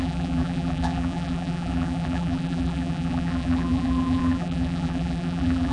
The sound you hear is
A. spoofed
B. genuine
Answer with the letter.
A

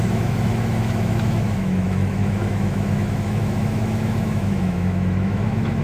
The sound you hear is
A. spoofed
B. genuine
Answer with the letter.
A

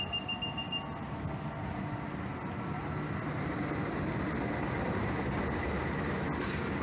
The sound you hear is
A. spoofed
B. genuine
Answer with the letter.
B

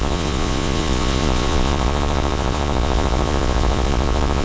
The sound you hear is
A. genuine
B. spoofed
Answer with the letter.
B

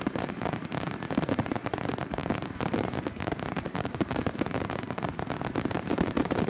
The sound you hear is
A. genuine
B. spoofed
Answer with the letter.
B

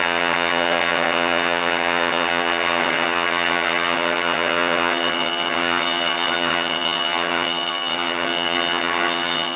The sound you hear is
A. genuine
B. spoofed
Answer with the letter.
B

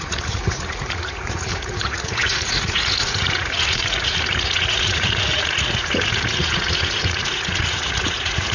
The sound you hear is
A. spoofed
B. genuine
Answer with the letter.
A